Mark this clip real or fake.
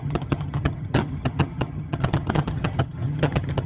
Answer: fake